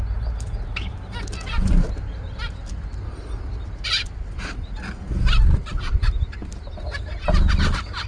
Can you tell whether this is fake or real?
real